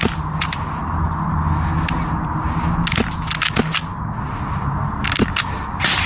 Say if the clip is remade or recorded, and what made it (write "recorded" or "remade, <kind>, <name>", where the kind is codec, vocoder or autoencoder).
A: recorded